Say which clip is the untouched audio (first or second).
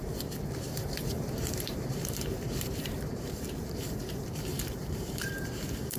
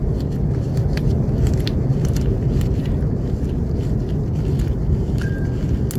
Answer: second